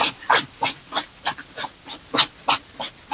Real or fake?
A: real